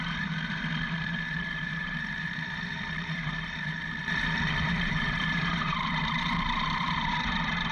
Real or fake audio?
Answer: fake